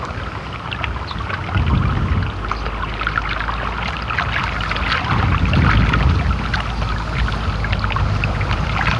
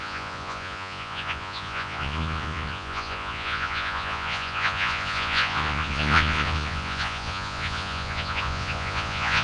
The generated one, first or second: second